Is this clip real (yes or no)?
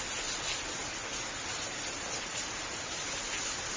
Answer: yes